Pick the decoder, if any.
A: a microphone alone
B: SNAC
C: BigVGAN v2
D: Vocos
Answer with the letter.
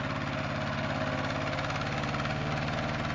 A